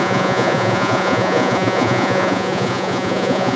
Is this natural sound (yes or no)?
no